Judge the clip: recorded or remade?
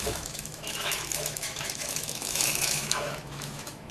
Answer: remade